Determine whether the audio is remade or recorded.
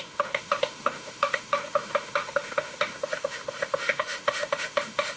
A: remade